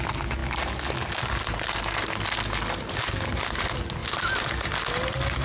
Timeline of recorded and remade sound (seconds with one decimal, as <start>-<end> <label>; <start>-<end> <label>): 0.0-5.4 recorded